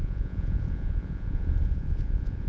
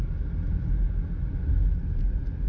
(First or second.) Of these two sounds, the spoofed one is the first